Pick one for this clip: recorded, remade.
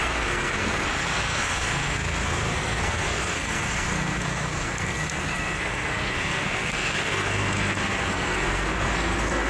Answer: remade